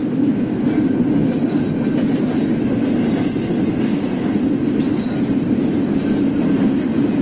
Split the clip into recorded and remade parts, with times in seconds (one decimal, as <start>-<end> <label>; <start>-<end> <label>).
0.0-0.6 remade; 0.6-7.2 recorded